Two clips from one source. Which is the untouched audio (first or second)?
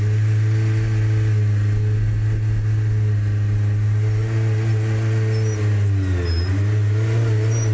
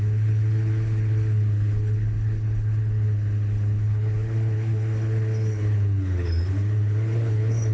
first